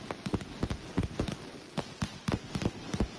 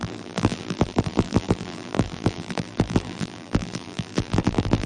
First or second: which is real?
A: first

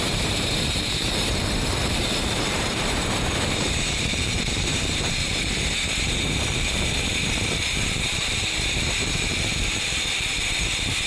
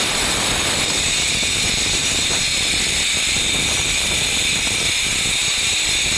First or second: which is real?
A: second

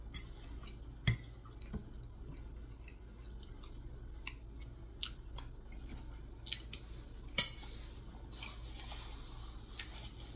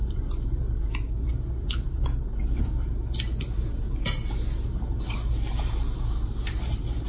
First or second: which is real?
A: first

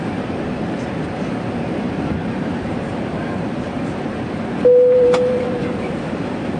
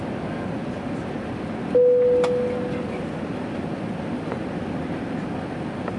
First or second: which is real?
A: second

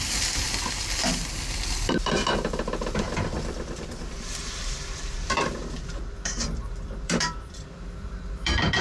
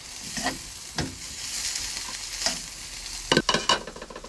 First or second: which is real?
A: second